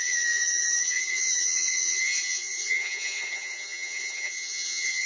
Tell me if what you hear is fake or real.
fake